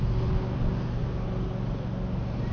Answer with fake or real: real